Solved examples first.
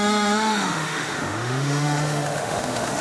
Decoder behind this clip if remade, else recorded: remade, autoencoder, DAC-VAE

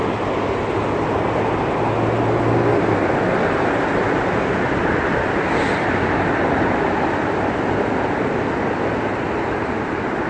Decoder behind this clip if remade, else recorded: recorded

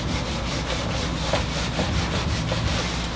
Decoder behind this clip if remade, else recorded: recorded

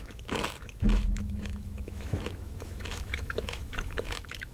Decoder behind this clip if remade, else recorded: remade, autoencoder, DAC-VAE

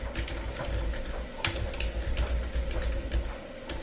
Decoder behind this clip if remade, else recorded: recorded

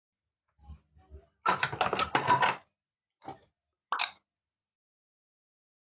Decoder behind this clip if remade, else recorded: recorded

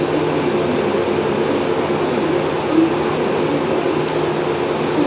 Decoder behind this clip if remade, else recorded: recorded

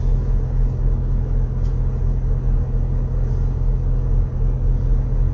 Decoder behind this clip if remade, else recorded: recorded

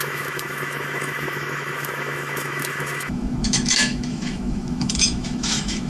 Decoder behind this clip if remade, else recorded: remade, autoencoder, DAC-VAE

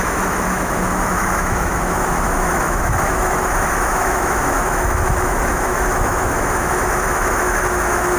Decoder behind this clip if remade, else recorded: remade, autoencoder, DAC-VAE